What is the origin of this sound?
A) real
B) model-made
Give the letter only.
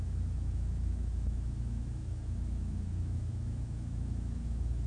B